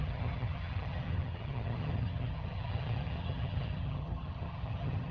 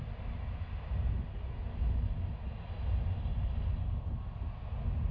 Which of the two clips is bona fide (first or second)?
second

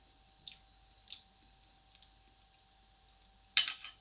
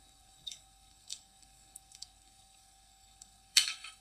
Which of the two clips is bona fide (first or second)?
first